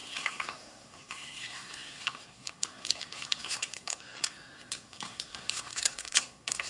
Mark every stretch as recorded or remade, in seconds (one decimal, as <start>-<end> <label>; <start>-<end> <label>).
0.0-6.7 remade